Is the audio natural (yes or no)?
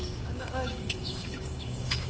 no